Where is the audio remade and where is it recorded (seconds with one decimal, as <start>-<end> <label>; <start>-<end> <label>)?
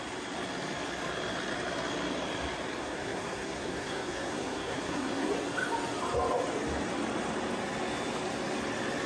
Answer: 0.0-2.8 recorded; 2.8-5.3 remade; 5.3-9.1 recorded